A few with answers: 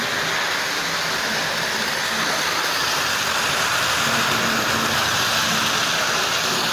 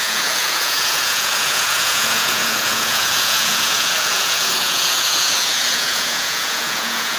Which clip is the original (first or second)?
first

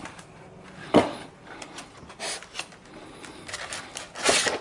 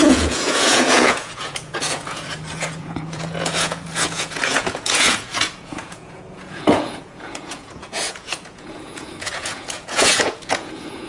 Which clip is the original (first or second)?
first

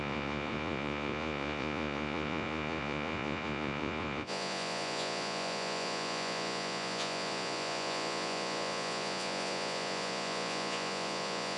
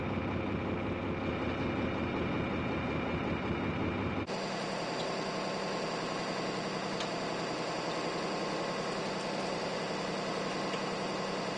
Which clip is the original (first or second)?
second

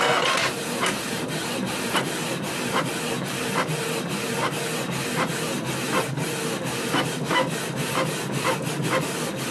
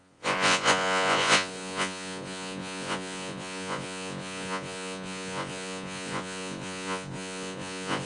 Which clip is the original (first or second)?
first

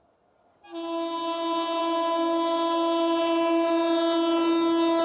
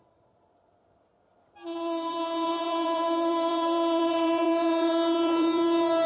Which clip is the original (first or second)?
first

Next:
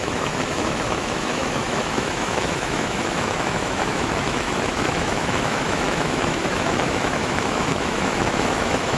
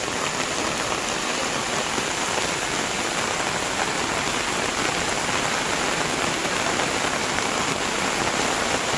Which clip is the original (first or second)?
second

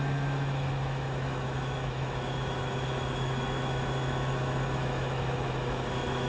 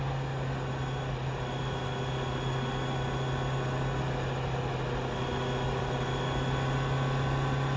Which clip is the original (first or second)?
second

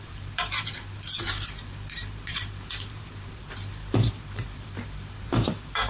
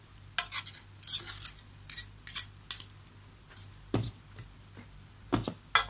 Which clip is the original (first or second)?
second